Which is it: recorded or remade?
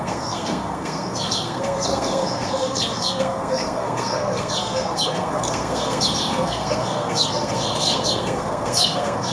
remade